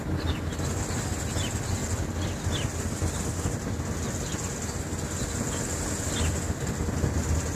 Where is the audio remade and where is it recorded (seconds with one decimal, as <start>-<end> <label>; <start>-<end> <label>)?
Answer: 0.0-7.5 recorded